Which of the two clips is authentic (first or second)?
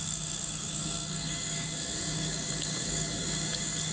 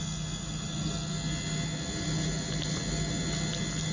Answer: second